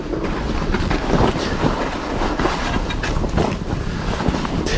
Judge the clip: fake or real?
real